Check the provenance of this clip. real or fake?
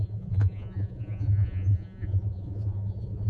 fake